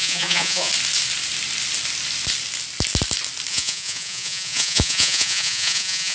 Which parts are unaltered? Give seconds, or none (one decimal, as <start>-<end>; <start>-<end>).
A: 0.7-3.5